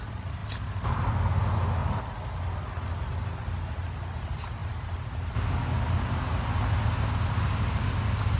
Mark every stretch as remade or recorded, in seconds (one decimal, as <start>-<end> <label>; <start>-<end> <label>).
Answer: 0.0-8.4 recorded